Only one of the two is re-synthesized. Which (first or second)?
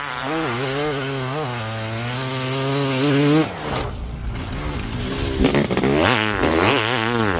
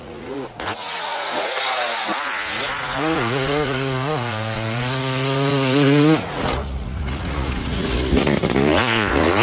second